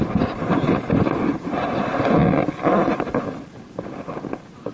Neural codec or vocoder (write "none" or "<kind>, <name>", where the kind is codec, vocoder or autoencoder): none